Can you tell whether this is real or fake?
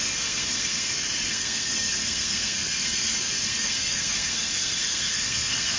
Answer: fake